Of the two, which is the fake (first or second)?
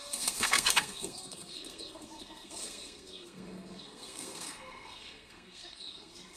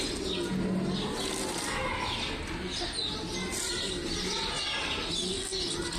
first